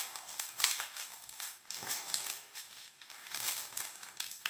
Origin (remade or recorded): remade